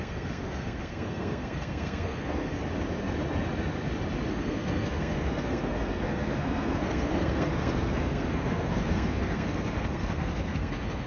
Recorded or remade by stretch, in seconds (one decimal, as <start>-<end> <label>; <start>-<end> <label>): 0.0-2.6 remade; 2.6-4.3 recorded; 4.3-11.1 remade